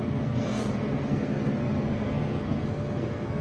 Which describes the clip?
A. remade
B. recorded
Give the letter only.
A